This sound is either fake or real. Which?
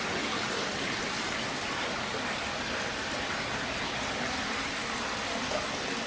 real